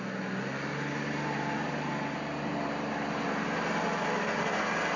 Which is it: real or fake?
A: real